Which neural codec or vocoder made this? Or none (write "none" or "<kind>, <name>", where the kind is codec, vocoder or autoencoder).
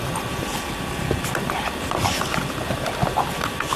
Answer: none